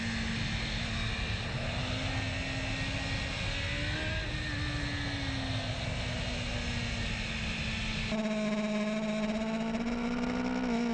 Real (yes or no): yes